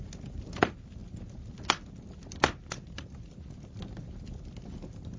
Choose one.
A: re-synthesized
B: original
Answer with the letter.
B